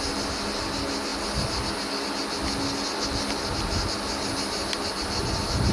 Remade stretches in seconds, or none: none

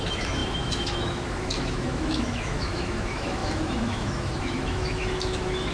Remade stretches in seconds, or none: 0.0-5.7

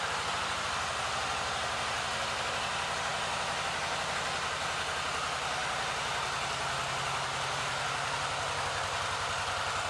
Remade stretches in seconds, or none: 5.6-9.9